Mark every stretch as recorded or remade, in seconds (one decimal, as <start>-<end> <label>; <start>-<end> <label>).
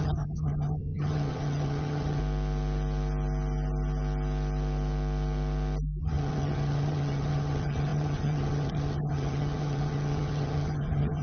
0.0-2.2 remade; 2.2-6.0 recorded; 6.0-11.2 remade